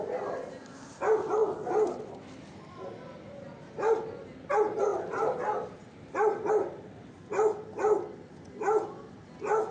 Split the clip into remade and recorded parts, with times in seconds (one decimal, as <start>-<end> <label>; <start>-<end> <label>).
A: 0.0-9.7 recorded